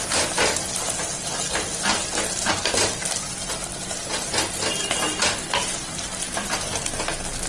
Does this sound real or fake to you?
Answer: real